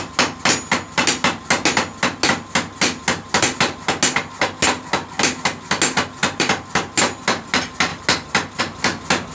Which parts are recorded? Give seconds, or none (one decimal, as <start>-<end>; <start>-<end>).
0.0-9.3